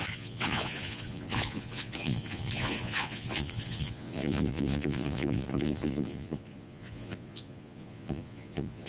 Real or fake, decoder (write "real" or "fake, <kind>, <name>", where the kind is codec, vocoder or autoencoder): fake, vocoder, Vocos